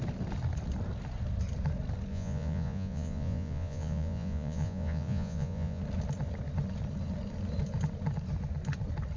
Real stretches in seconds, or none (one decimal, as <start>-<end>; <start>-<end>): 0.0-2.1; 5.8-9.2